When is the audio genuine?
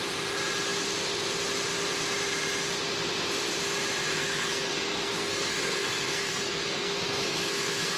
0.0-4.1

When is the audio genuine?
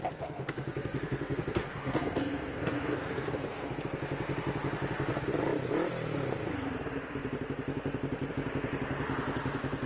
3.8-9.9